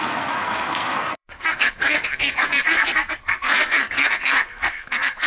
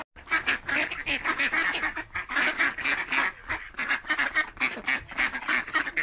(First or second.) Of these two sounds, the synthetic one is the first